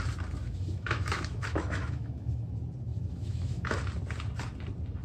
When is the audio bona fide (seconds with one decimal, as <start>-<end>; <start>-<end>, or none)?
0.0-0.4; 2.5-2.9; 3.8-5.0